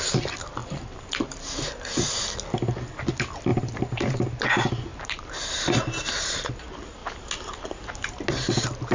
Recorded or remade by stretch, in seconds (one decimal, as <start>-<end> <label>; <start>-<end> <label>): 0.0-0.6 recorded; 0.6-1.1 remade; 1.1-3.5 recorded; 3.5-4.5 remade; 4.5-4.9 recorded; 4.9-5.5 remade; 5.5-8.9 recorded